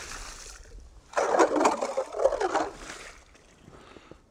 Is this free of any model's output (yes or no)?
yes